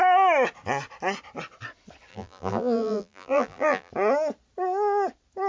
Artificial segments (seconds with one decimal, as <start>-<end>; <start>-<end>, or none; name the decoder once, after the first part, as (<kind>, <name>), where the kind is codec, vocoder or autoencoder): 2.1-3.9 (vocoder, BigVGAN v2)